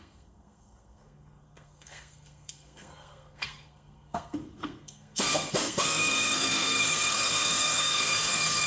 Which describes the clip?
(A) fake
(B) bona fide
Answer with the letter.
A